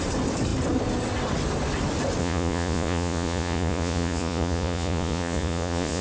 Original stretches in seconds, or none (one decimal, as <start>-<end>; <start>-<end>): 0.0-2.2